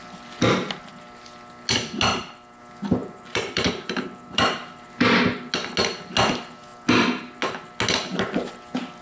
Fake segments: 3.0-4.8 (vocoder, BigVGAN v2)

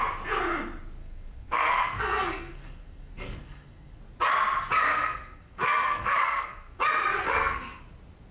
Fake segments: 1.0-4.0 (codec, SNAC); 4.9-6.8; 7.2-7.8

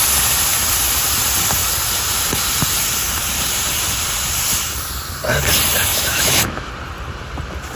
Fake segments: 5.9-6.7 (autoencoder, DAC-VAE)

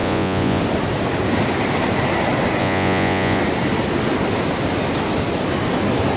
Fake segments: 0.0-0.6 (vocoder, Vocos); 2.6-3.4